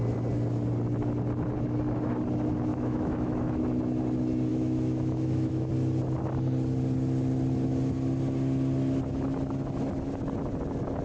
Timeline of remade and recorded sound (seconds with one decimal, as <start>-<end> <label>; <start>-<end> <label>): 0.0-2.7 recorded; 2.7-3.6 remade; 3.6-4.5 recorded; 4.5-5.7 remade; 5.7-11.0 recorded